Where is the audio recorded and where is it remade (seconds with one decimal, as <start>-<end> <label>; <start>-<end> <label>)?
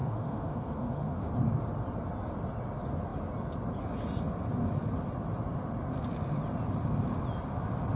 0.0-1.3 remade; 1.3-8.0 recorded